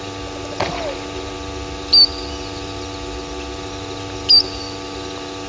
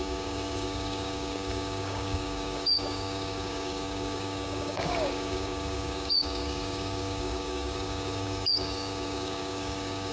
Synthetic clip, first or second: second